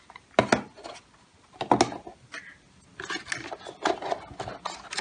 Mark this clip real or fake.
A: real